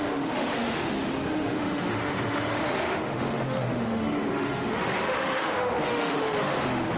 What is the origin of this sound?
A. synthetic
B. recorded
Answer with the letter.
A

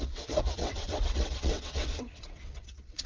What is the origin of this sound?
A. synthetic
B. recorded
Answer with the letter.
A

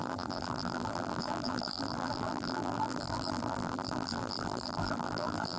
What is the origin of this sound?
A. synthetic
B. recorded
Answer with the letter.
A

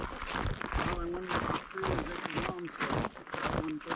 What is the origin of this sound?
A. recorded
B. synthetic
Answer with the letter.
A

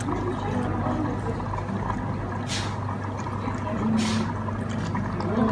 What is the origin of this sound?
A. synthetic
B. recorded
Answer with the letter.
B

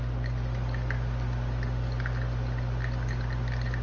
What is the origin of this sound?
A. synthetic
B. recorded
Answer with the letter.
B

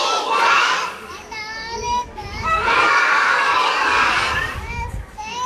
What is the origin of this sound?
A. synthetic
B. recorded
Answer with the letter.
A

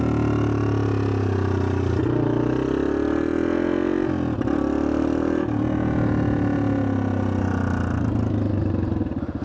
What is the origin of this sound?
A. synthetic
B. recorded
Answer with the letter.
B